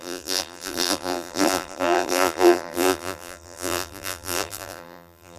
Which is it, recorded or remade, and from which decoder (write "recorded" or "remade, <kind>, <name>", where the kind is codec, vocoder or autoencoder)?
remade, vocoder, BigVGAN v2